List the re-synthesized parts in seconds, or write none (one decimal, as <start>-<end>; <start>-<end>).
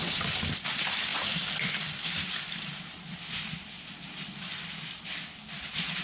none